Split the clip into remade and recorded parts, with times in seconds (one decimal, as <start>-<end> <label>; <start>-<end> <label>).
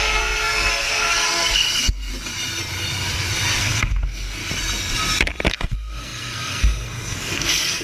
0.0-2.1 remade; 2.1-3.6 recorded; 3.6-4.4 remade; 4.4-5.5 recorded; 5.5-7.8 remade